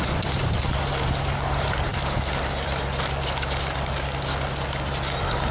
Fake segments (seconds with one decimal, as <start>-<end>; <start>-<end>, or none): none